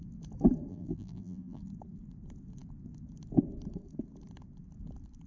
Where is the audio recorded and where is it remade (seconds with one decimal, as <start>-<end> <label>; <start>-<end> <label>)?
0.0-0.7 recorded; 0.7-1.6 remade; 1.6-5.3 recorded